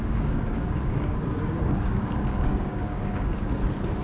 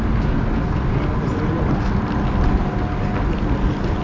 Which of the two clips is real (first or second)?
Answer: second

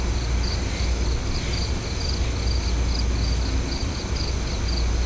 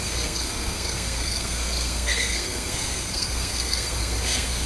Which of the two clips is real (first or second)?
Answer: first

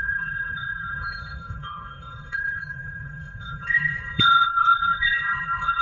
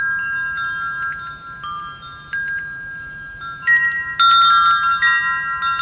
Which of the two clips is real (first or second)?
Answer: second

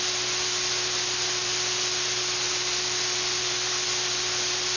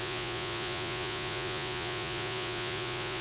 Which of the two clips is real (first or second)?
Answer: first